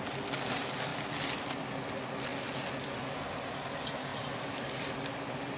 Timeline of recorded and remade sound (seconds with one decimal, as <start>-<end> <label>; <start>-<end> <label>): 0.0-0.9 recorded; 0.9-1.7 remade; 1.7-4.1 recorded; 4.1-4.7 remade; 4.7-5.6 recorded